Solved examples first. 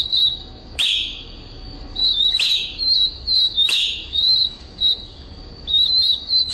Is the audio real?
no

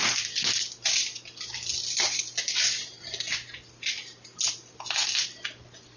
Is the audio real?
yes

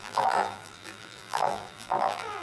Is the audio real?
no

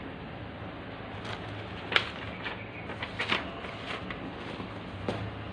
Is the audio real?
yes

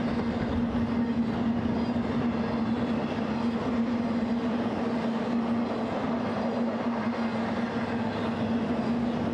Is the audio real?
yes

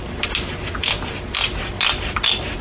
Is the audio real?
yes